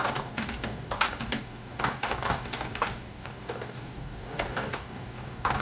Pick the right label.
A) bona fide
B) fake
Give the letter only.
B